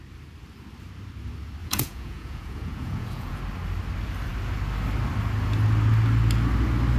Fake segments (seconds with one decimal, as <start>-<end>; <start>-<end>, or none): 1.6-3.4